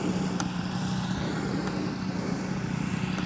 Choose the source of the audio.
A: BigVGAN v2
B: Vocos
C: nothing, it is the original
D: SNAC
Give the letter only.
C